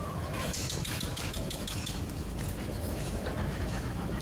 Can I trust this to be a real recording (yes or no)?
no